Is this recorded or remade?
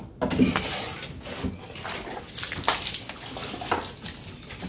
recorded